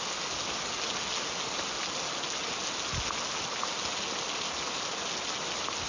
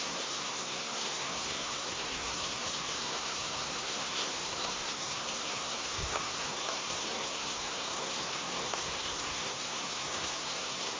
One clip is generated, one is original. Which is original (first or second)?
first